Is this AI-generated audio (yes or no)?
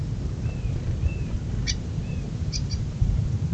no